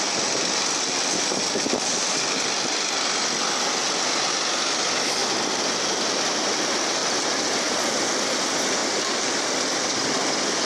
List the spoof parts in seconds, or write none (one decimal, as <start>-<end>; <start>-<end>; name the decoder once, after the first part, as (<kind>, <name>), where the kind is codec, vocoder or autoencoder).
5.2-6.2 (vocoder, BigVGAN v2); 7.0-7.9; 8.8-9.9